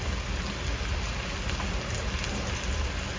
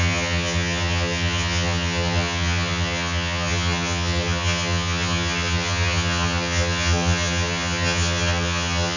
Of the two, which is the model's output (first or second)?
second